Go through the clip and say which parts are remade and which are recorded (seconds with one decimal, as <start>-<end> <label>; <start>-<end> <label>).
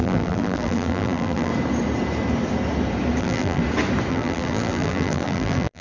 0.0-1.5 remade; 1.5-3.2 recorded; 3.2-3.6 remade; 3.6-4.1 recorded; 4.1-5.8 remade